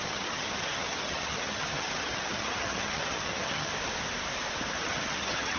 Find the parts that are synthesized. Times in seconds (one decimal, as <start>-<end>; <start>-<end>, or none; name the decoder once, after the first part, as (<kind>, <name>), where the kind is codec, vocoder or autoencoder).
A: 0.0-3.7 (vocoder, HiFi-GAN); 4.8-5.6